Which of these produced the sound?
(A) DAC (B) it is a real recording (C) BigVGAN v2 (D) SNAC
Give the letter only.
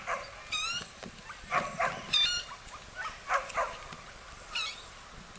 B